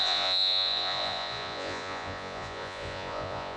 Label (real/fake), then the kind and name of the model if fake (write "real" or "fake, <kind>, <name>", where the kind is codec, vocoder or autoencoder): fake, vocoder, Vocos